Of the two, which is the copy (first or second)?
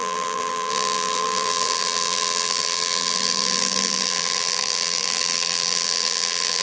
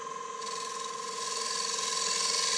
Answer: first